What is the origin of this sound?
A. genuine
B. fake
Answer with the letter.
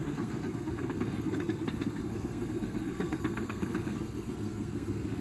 B